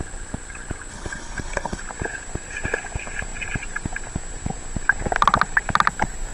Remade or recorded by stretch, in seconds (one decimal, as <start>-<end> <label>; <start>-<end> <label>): 0.0-0.9 recorded; 0.9-1.8 remade; 1.8-6.3 recorded